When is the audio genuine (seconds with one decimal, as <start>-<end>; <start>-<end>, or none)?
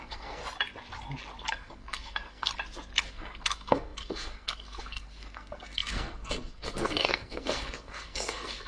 0.4-1.5; 2.5-3.1